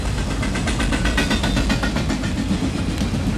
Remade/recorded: recorded